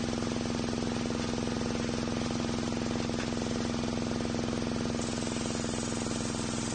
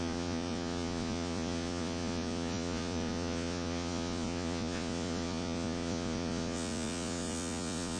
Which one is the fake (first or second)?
second